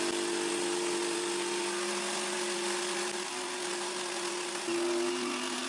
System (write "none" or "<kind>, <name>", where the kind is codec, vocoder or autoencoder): none